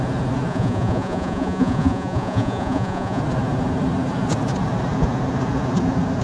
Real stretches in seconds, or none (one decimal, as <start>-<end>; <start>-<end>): 0.0-0.5; 3.2-6.2